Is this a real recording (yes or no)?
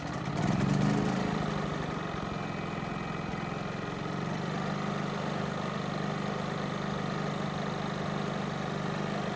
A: yes